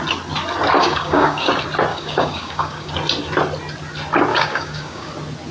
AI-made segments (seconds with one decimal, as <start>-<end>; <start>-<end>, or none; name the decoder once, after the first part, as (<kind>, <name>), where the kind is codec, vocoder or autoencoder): 0.8-1.5 (codec, DAC); 1.9-2.9; 4.3-5.1